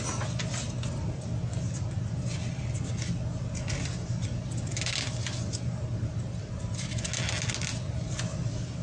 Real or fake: real